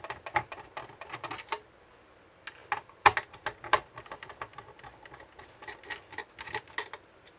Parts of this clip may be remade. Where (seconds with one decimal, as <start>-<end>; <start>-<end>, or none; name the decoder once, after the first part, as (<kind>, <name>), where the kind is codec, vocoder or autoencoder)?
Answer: none